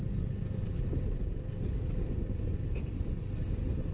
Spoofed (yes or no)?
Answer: no